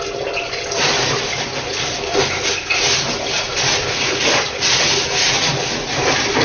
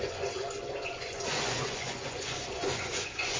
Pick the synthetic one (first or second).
second